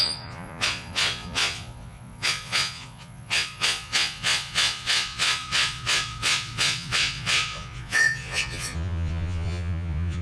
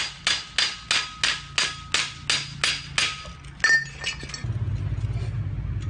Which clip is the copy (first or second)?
first